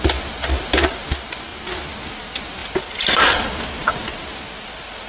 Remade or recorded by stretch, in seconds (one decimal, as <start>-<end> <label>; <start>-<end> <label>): 0.0-1.5 recorded; 1.5-2.1 remade; 2.1-2.6 recorded; 2.6-3.9 remade; 3.9-5.1 recorded